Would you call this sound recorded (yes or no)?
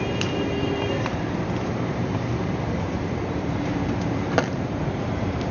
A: no